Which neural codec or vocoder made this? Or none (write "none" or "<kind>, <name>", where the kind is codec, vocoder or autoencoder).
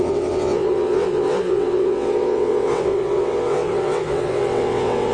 vocoder, WaveNeXt